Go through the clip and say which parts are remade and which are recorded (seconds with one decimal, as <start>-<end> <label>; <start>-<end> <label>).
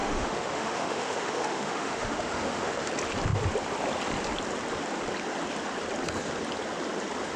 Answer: 0.0-2.9 remade; 2.9-7.4 recorded